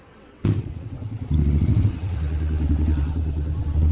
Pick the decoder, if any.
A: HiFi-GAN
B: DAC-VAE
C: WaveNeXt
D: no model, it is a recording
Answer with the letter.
C